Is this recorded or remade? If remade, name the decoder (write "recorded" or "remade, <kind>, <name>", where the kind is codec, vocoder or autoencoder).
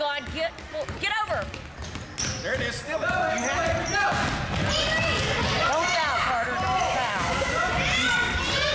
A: recorded